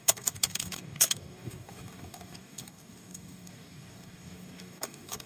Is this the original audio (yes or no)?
no